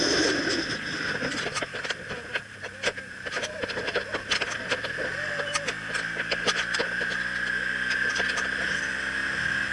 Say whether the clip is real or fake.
real